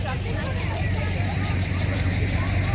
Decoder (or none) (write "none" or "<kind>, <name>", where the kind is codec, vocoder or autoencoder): vocoder, BigVGAN v2